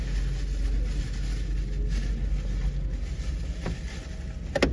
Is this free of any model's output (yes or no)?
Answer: yes